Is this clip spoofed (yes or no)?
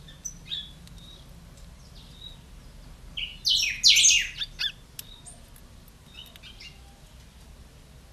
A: no